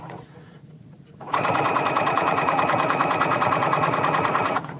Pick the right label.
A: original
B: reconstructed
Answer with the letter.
B